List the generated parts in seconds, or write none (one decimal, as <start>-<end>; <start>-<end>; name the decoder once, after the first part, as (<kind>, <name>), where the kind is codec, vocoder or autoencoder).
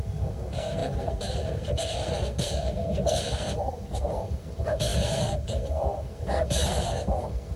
0.0-7.6 (codec, SNAC)